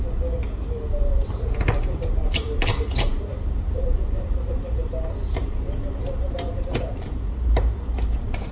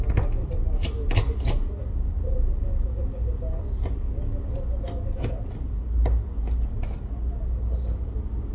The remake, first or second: first